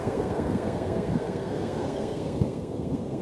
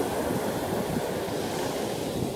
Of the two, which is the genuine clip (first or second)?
second